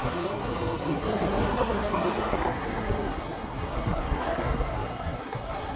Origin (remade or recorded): remade